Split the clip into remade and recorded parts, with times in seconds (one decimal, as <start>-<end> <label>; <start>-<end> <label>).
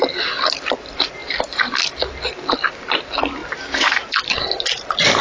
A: 0.0-5.2 recorded